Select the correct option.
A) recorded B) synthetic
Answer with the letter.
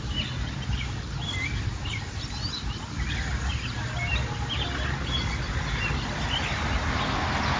A